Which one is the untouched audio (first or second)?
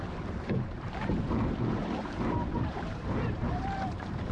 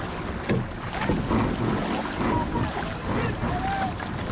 second